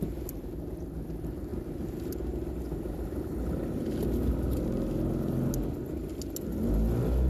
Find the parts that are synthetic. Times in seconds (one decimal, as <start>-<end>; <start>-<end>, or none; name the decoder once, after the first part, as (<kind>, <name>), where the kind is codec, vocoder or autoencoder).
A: none